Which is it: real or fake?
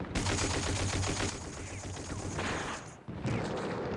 real